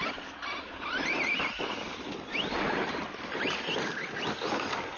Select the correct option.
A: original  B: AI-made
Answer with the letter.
A